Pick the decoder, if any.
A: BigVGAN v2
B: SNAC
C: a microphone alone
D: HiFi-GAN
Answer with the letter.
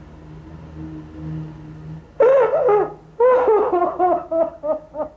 C